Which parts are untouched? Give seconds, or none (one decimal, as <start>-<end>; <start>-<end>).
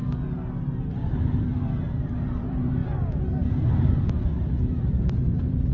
0.0-0.9; 2.8-3.8; 4.3-4.8